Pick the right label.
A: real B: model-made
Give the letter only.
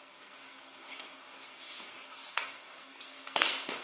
B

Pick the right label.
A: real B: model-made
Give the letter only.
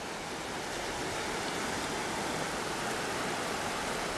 A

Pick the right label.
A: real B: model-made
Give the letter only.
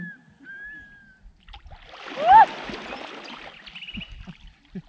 A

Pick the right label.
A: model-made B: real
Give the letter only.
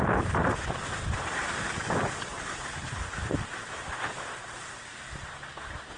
B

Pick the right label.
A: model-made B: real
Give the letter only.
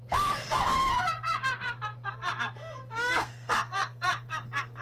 A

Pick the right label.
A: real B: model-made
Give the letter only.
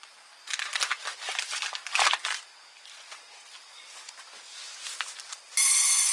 A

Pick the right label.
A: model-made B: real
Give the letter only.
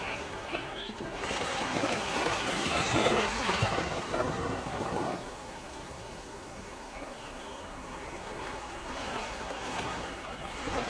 A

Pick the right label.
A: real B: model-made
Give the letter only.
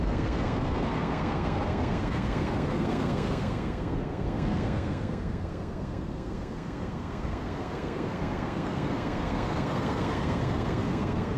B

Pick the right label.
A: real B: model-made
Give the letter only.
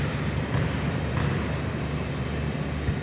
A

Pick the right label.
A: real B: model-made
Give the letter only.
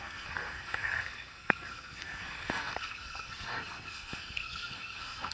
B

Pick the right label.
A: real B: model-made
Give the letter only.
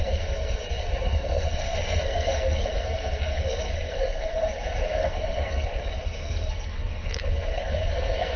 B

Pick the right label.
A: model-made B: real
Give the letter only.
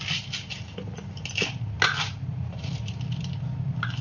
B